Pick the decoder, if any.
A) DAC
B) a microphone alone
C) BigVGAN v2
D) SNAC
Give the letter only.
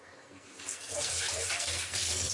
D